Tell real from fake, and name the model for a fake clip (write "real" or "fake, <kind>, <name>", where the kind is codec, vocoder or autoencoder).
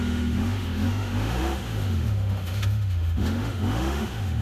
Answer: fake, autoencoder, DAC-VAE